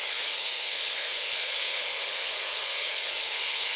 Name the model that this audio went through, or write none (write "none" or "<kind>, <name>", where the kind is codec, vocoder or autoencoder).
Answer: codec, HILCodec